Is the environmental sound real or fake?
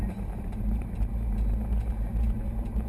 fake